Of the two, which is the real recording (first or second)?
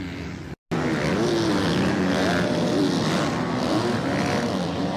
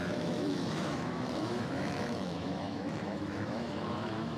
first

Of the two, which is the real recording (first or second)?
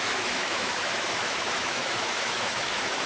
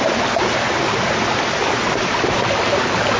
second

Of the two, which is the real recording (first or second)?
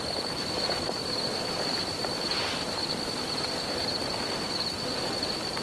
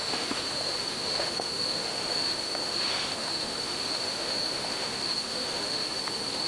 first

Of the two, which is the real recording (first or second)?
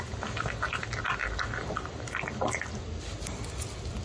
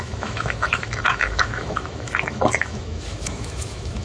first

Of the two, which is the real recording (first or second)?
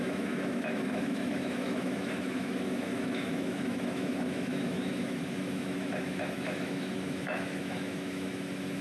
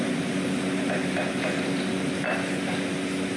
second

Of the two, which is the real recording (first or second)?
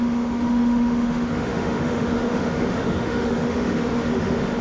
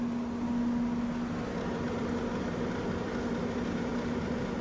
second